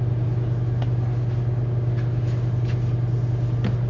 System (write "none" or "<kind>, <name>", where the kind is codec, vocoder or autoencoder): none